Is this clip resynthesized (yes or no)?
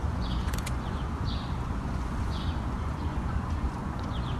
yes